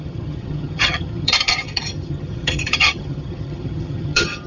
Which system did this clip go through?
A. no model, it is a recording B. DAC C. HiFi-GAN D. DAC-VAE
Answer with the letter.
C